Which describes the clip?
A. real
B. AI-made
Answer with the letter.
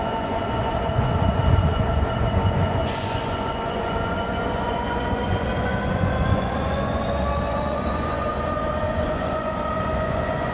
B